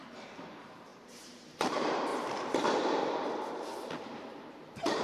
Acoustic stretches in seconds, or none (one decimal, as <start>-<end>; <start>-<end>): 2.1-3.5